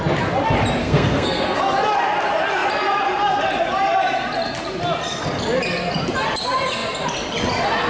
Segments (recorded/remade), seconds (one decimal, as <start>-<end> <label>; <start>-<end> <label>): 0.0-0.8 recorded; 0.8-1.6 remade; 1.6-7.9 recorded